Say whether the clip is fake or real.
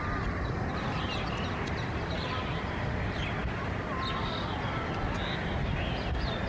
real